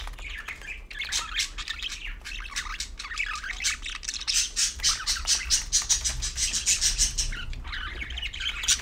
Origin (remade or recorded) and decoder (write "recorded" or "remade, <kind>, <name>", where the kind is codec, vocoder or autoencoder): recorded